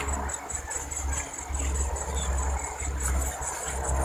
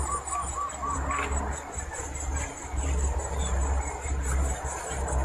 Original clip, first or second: first